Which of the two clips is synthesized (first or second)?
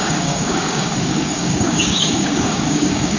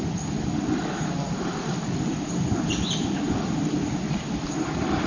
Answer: first